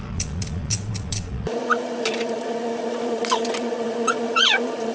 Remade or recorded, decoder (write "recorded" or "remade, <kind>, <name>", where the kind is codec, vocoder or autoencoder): remade, vocoder, Vocos